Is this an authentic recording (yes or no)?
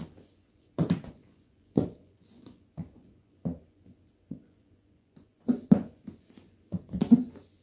no